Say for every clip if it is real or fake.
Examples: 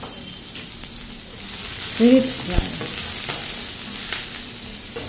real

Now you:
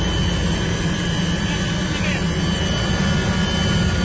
real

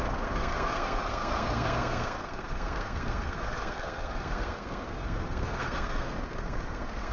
fake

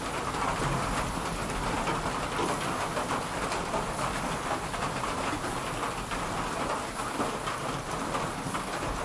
real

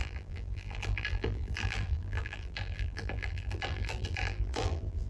fake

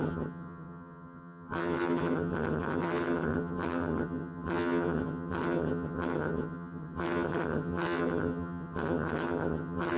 fake